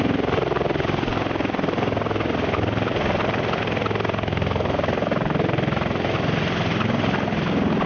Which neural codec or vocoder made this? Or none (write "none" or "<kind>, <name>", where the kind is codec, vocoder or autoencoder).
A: none